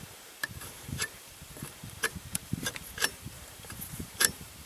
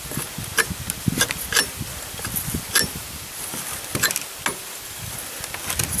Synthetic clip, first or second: first